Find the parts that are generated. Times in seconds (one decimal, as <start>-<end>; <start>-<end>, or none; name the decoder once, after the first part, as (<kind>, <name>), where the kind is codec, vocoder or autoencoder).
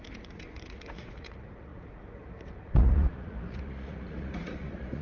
0.0-5.0 (vocoder, Vocos)